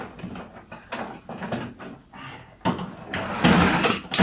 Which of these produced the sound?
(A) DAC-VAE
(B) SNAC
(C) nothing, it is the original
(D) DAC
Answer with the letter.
C